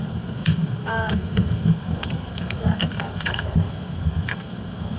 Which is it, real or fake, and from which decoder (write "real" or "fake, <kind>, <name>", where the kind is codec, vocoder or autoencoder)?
fake, codec, SNAC